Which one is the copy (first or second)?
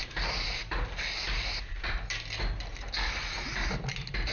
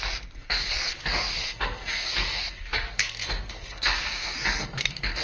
second